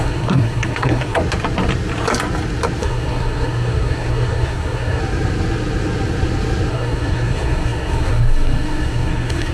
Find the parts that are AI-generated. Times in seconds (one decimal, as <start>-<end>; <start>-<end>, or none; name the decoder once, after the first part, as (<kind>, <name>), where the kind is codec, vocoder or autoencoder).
0.0-1.2 (codec, SNAC); 2.8-5.0; 6.7-9.5